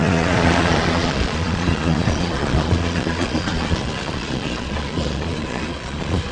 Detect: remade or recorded remade